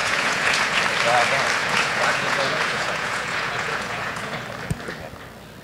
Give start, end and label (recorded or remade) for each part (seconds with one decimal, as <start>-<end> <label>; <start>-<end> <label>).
0.0-0.8 remade; 0.8-1.6 recorded; 1.6-4.4 remade; 4.4-5.6 recorded